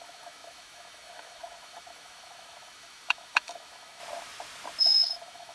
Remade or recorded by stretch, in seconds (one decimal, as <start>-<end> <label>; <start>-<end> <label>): 0.0-4.0 remade; 4.0-4.8 recorded; 4.8-5.5 remade